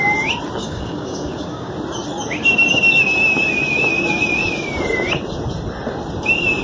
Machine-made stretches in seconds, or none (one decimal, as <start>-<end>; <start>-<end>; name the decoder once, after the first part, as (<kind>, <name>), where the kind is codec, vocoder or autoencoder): 0.6-1.7 (codec, DAC)